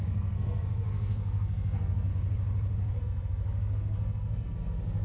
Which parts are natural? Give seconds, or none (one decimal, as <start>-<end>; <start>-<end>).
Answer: 2.1-3.0